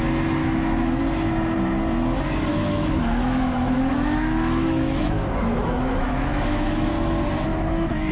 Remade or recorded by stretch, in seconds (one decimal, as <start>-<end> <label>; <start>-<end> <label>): 0.0-0.4 recorded; 0.4-1.0 remade; 1.0-2.5 recorded; 2.5-6.9 remade; 6.9-7.5 recorded; 7.5-8.1 remade